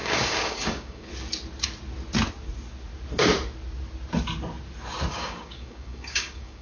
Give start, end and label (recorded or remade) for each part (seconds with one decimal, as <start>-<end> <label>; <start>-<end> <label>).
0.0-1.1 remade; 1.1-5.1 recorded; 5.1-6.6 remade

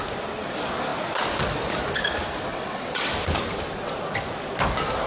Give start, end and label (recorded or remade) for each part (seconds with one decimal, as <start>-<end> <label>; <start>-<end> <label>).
0.0-2.5 recorded; 2.5-3.1 remade; 3.1-5.1 recorded

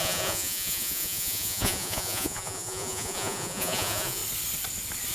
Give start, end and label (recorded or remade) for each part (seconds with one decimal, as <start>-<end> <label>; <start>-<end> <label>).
0.0-4.2 remade; 4.2-5.1 recorded